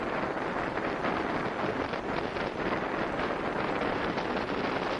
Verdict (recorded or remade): recorded